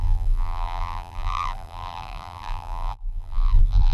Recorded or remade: remade